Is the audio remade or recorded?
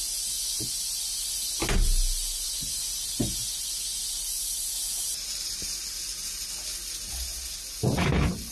recorded